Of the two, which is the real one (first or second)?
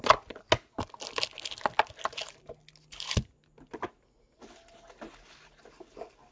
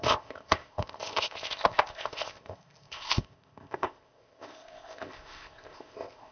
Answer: first